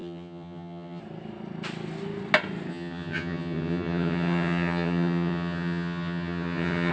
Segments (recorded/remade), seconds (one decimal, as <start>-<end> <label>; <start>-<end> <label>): 0.0-1.0 remade; 1.0-2.7 recorded; 2.7-6.9 remade